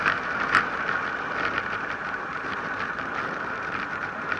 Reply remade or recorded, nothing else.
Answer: remade